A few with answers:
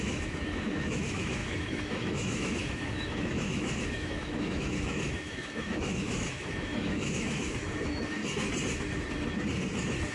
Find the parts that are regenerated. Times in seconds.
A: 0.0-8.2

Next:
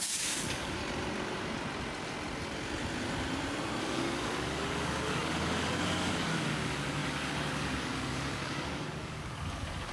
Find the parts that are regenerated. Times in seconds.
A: 0.0-0.8; 3.8-9.9

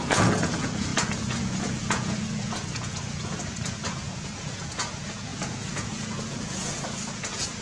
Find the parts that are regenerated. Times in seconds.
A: 0.0-7.6